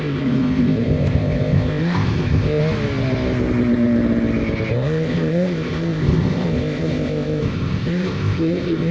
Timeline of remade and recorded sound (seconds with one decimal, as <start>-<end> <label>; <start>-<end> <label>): 0.0-2.6 remade; 2.6-4.7 recorded; 4.7-8.9 remade